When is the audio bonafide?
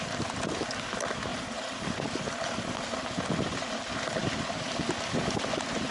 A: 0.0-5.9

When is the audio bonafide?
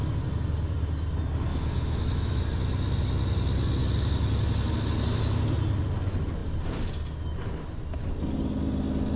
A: 0.0-1.5; 2.4-9.2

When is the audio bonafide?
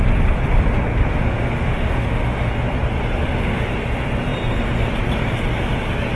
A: 0.0-1.1; 2.5-3.2; 3.7-6.2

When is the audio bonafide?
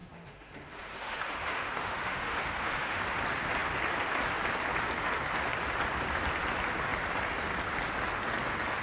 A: 3.0-8.8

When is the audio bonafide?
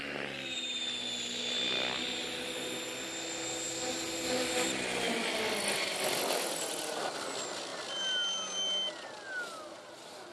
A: 0.0-10.3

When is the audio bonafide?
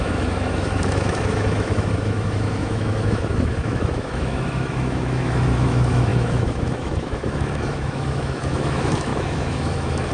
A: none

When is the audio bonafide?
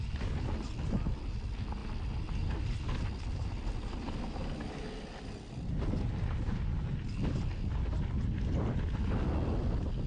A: 0.0-10.1